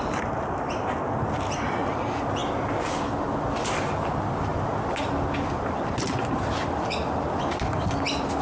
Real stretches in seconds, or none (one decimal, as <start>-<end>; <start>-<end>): 0.0-2.4; 3.4-4.5; 7.9-8.4